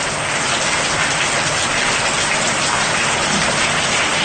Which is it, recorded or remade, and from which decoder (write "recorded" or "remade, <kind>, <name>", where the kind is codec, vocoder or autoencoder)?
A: recorded